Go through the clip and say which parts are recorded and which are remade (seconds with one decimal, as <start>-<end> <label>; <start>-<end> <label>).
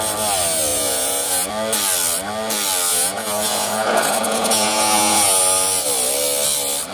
0.0-0.7 recorded; 0.7-1.5 remade; 1.5-2.9 recorded; 2.9-5.4 remade; 5.4-6.9 recorded